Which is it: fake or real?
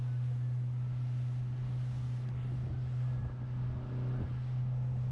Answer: real